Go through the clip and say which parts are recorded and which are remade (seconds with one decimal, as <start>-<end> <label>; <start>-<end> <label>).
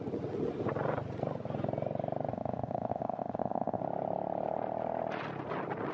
0.0-2.3 recorded; 2.3-3.8 remade; 3.8-5.9 recorded